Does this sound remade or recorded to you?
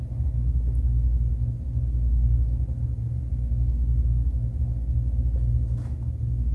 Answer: recorded